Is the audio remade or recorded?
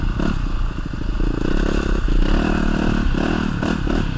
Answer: recorded